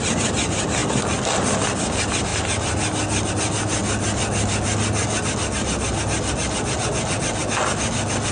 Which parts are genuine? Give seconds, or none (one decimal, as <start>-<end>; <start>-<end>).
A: 0.0-8.3